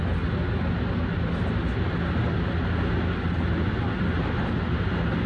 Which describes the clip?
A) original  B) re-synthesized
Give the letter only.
A